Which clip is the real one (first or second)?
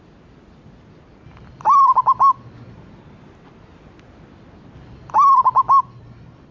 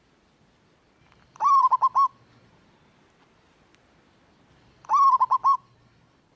first